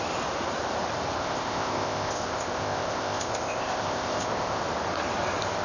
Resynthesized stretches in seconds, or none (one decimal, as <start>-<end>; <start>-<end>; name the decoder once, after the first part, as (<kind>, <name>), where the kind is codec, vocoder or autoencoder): 1.2-4.6 (codec, ZipCodec)